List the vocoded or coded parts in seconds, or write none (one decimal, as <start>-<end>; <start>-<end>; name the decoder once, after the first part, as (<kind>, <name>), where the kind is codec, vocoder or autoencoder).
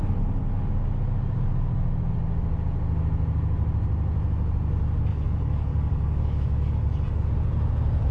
5.1-7.3 (codec, DAC)